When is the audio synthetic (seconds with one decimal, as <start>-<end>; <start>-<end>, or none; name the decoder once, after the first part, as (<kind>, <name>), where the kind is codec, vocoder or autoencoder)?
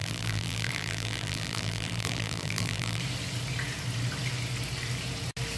0.0-3.0 (vocoder, BigVGAN v2)